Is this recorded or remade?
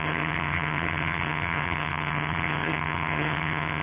remade